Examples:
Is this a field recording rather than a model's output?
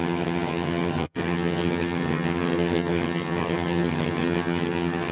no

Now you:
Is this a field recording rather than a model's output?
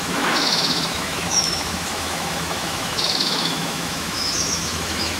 no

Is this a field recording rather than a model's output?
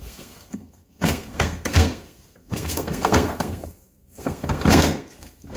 no